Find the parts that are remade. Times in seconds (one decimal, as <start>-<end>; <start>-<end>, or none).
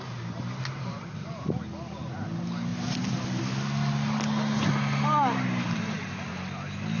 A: none